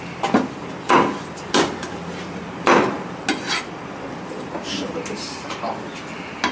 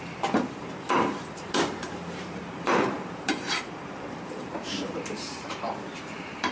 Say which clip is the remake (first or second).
second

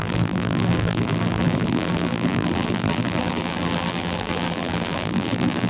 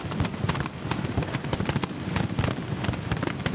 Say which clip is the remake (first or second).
first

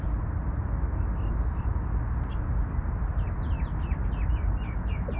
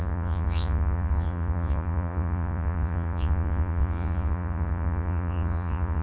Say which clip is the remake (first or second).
second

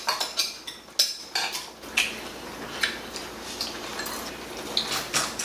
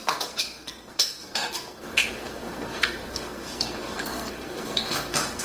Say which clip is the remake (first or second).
second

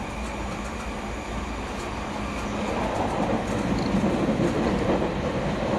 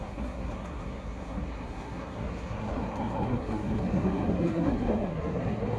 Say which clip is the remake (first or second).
second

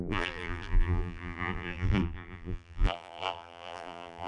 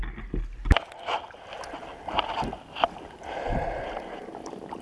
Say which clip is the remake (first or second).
first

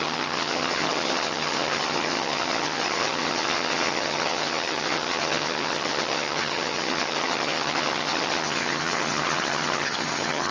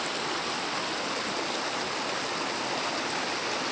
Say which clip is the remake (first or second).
first